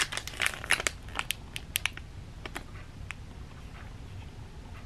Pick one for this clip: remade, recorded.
recorded